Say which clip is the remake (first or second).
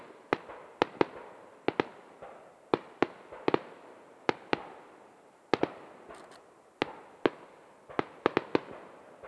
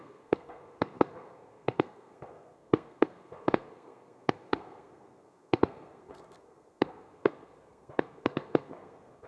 second